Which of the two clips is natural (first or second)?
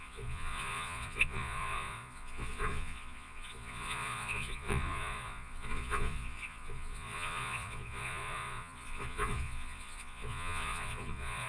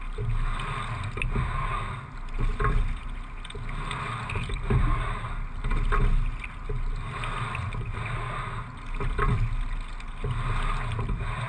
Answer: second